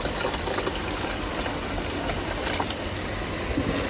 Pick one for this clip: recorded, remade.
recorded